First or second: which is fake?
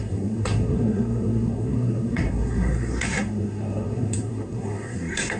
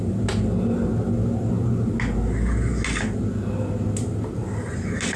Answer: first